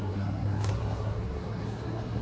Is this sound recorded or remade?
remade